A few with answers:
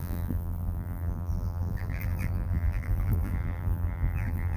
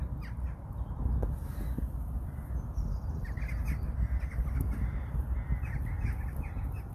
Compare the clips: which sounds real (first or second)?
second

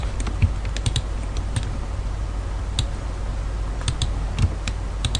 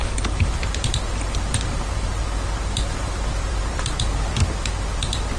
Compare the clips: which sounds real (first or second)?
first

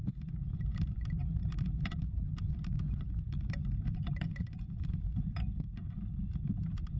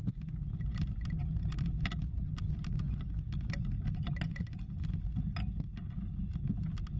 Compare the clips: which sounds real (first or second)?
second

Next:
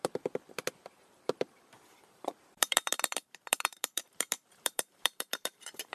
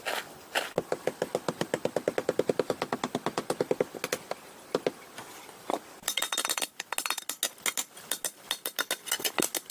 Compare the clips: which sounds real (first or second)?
second